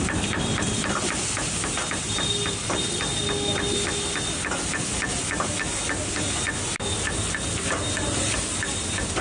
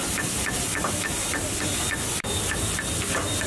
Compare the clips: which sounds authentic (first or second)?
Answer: first